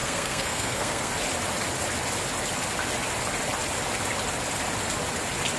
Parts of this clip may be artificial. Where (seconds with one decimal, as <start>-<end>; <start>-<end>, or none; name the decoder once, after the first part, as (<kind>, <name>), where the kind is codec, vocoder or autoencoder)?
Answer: 0.0-1.1 (codec, SNAC)